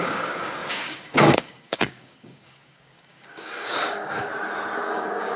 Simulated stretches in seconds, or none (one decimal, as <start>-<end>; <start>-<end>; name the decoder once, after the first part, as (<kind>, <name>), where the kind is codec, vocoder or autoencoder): 0.0-4.3 (codec, DAC); 4.9-5.4